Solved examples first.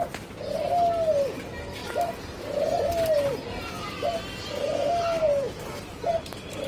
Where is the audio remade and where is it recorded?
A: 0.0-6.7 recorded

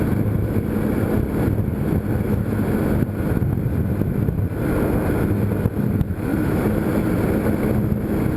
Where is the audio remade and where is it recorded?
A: 0.0-6.3 recorded; 6.3-6.8 remade; 6.8-8.4 recorded

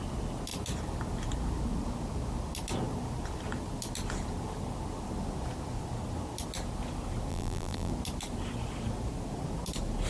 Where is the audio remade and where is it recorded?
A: 0.0-7.3 recorded; 7.3-7.9 remade; 7.9-10.1 recorded

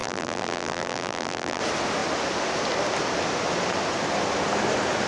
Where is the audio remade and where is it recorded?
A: 0.0-1.6 remade; 1.6-5.1 recorded